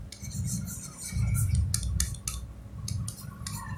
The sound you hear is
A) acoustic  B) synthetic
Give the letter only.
A